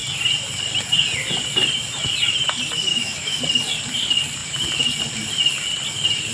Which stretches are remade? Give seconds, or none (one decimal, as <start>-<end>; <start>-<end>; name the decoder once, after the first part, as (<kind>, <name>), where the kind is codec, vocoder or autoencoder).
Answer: 2.9-3.4 (autoencoder, DAC-VAE)